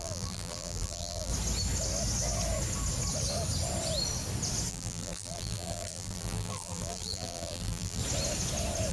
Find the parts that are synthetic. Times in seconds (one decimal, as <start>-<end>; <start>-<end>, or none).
0.0-1.3; 4.7-8.0